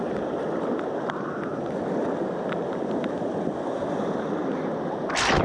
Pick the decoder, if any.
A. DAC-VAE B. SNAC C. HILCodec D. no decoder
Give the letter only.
D